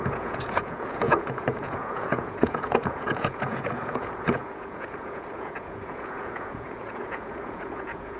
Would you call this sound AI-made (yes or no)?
yes